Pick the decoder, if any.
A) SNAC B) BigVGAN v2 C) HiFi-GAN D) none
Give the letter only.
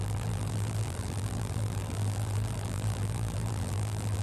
B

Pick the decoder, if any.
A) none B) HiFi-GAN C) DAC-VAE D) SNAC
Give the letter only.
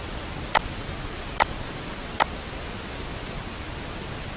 A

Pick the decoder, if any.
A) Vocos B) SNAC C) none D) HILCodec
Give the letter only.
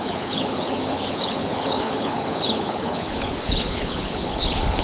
D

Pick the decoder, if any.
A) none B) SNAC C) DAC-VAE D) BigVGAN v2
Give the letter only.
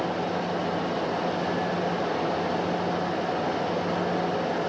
A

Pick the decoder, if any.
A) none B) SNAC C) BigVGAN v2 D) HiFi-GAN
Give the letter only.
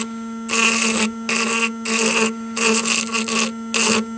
A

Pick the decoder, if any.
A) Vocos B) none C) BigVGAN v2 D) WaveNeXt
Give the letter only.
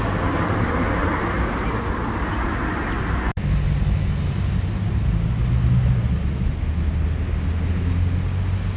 B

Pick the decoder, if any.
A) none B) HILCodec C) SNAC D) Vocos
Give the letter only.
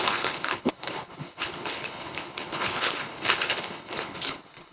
B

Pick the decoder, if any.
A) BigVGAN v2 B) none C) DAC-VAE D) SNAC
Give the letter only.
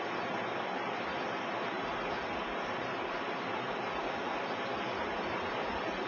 B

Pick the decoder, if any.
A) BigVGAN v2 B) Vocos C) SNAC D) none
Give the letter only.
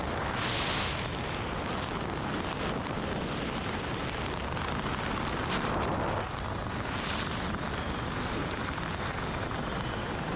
D